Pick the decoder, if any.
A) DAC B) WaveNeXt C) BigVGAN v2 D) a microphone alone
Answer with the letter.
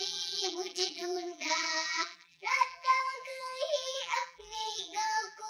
C